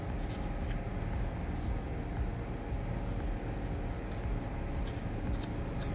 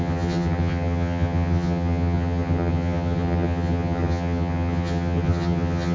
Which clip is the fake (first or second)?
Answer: second